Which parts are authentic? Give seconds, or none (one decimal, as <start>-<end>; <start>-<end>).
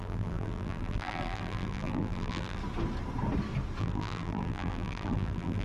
2.6-3.8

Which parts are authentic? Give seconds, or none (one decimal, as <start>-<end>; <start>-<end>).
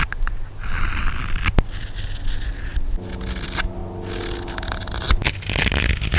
0.0-6.2